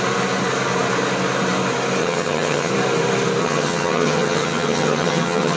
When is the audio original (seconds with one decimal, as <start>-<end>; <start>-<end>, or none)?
0.0-2.0; 2.7-3.4